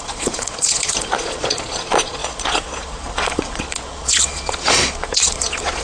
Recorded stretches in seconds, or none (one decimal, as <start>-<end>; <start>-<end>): none